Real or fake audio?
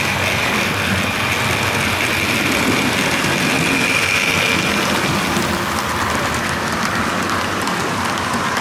real